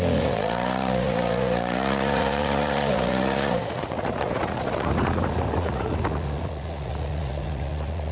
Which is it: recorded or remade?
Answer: remade